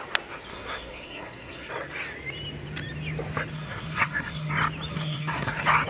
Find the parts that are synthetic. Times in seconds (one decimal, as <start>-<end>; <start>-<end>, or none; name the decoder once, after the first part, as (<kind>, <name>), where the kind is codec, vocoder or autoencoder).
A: 0.5-1.7 (codec, SNAC); 3.5-4.5; 4.9-5.5